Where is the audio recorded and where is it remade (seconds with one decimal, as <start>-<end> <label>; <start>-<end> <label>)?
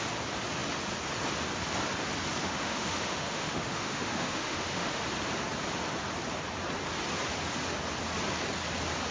0.0-2.4 recorded; 2.4-5.0 remade; 5.0-9.1 recorded